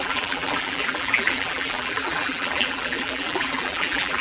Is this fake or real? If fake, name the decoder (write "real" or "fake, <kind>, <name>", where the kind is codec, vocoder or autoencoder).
fake, vocoder, BigVGAN v2